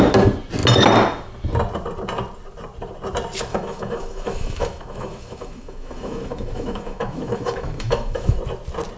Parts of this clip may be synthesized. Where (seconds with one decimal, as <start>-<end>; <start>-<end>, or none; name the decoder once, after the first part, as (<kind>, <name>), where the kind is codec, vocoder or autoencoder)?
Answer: 3.5-8.4 (autoencoder, DAC-VAE)